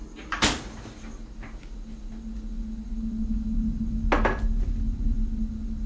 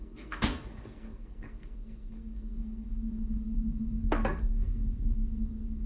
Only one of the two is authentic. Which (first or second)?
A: first